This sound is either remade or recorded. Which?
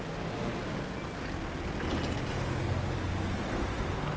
recorded